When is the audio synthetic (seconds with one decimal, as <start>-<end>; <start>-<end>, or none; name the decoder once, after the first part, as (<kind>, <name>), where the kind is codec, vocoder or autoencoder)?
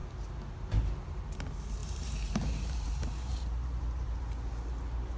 1.8-4.2 (vocoder, BigVGAN v2)